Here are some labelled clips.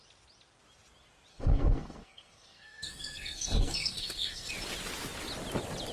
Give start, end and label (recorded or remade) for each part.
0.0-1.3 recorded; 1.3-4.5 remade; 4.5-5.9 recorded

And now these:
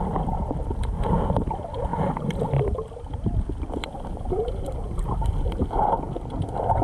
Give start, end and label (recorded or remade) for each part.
0.0-6.8 recorded